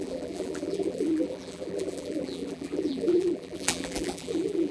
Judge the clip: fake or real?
fake